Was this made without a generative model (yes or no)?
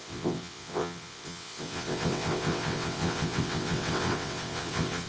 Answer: no